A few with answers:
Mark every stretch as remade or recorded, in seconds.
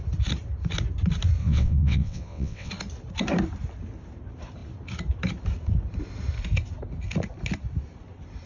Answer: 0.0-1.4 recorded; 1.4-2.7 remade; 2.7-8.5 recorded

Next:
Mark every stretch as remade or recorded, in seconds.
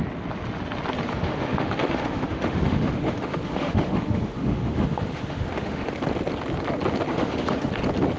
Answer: 0.0-1.1 recorded; 1.1-5.9 remade; 5.9-7.1 recorded; 7.1-7.7 remade; 7.7-8.2 recorded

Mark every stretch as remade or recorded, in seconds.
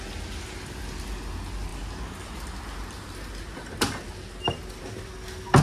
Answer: 0.0-5.6 recorded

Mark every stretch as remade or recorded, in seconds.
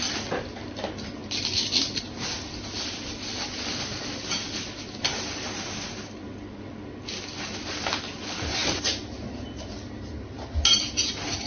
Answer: 0.0-1.2 recorded; 1.2-2.0 remade; 2.0-8.6 recorded; 8.6-10.2 remade; 10.2-11.5 recorded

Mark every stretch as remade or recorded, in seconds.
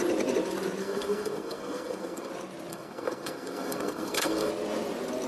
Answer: 0.0-0.8 recorded; 0.8-2.3 remade; 2.3-2.7 recorded; 2.7-4.5 remade; 4.5-5.3 recorded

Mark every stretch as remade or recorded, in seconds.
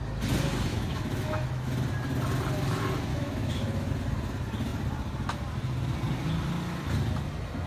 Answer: 0.0-0.7 recorded; 0.7-1.7 remade; 1.7-3.1 recorded; 3.1-3.9 remade; 3.9-7.7 recorded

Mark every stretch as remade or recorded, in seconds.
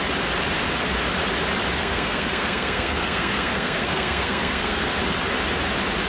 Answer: 0.0-1.8 recorded; 1.8-4.9 remade; 4.9-6.1 recorded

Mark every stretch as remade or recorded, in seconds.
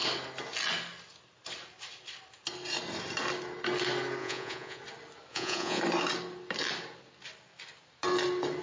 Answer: 0.0-4.2 recorded; 4.2-4.8 remade; 4.8-5.3 recorded; 5.3-5.8 remade; 5.8-8.6 recorded